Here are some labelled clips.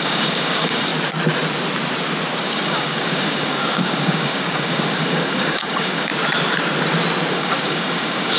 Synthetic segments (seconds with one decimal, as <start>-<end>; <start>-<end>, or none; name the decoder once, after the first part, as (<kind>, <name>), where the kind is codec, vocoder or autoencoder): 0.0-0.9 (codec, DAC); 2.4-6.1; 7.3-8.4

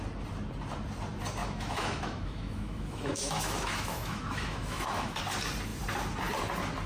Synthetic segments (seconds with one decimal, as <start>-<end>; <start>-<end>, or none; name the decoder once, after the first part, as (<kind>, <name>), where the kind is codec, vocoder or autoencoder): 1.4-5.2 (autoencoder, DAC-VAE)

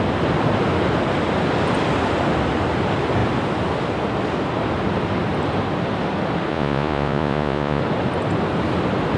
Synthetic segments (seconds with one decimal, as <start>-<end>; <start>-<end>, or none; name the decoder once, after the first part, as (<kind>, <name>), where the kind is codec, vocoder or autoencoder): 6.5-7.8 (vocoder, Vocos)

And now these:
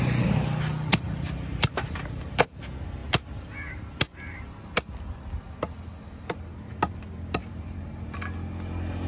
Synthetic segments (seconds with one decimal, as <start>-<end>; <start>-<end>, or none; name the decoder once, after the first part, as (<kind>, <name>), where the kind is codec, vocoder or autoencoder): 0.9-2.6 (vocoder, BigVGAN v2); 7.4-8.1

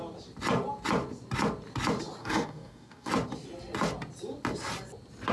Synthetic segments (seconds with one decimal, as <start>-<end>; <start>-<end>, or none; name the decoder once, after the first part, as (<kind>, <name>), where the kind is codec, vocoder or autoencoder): 2.2-3.1 (codec, DAC)